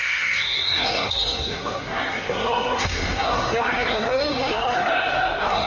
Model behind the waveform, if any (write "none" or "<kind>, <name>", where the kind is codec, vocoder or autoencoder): codec, SNAC